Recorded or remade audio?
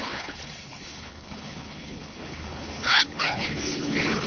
remade